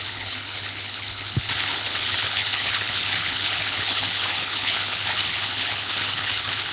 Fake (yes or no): yes